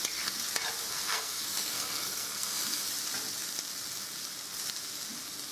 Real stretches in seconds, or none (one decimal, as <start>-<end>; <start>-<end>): 0.0-0.8; 2.9-5.5